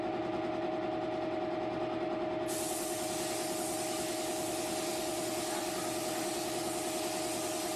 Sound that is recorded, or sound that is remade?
recorded